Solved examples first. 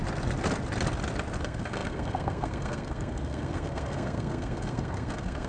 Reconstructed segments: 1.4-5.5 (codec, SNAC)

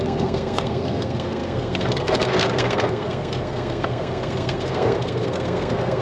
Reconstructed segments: 0.0-6.0 (codec, SNAC)

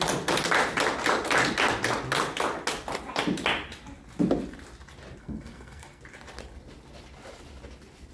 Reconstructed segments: 5.2-6.0 (codec, SNAC)

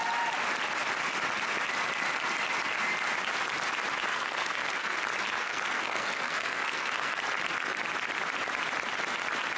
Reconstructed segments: 4.1-5.0 (codec, SNAC); 5.4-7.2